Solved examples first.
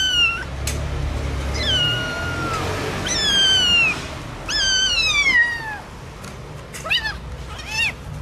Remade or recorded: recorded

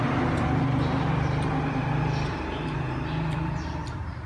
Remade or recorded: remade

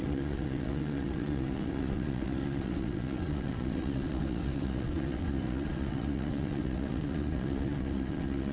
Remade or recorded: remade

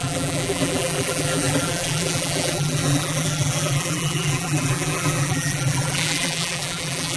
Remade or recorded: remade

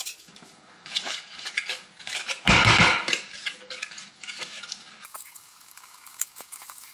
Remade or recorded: remade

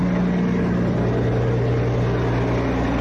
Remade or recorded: recorded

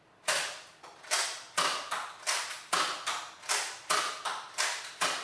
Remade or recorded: recorded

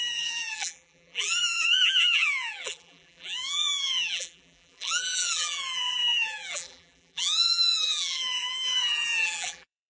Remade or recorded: remade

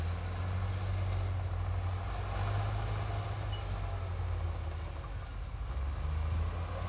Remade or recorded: recorded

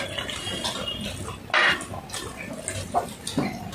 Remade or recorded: recorded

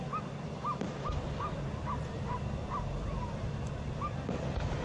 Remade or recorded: recorded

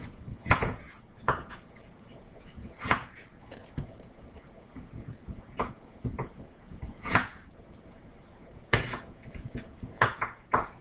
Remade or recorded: remade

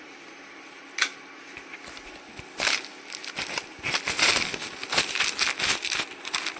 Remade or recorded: recorded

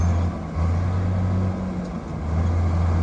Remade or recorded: recorded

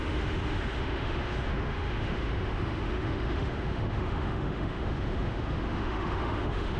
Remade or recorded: remade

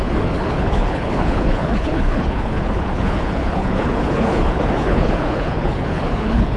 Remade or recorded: remade